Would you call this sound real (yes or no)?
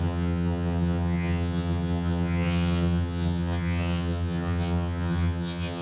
no